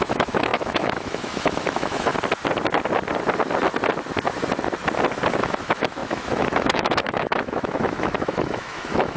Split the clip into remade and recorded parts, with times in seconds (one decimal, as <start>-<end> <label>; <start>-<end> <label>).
0.0-2.1 remade; 2.1-5.3 recorded; 5.3-9.2 remade